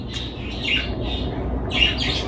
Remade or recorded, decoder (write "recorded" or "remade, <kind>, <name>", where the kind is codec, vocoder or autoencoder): recorded